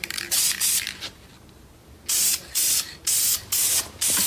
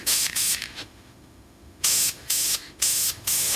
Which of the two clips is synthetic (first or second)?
second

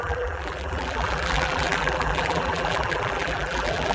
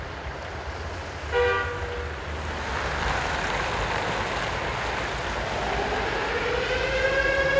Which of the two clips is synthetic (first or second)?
first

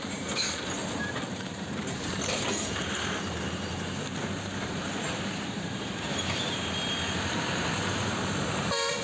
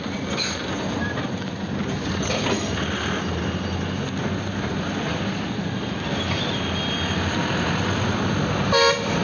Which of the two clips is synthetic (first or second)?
first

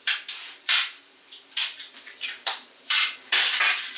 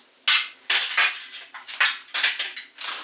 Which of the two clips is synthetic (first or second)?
first